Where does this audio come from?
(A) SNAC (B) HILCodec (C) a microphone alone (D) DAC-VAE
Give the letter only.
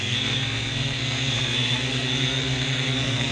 A